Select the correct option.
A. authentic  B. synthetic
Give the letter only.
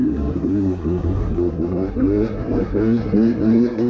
B